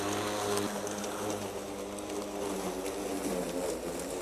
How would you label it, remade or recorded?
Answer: recorded